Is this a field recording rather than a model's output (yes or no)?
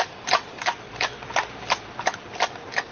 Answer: yes